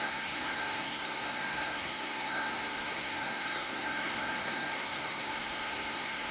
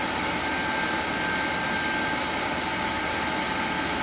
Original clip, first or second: second